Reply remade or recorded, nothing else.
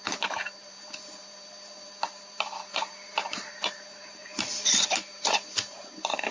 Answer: remade